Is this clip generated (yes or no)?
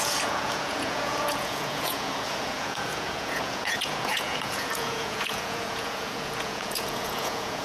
yes